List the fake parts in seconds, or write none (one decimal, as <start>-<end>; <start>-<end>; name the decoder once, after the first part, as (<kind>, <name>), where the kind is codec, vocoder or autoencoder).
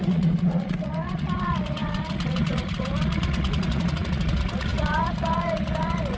0.0-6.2 (vocoder, Vocos)